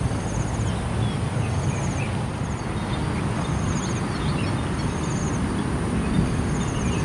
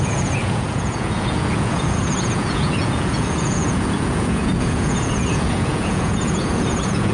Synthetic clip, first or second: second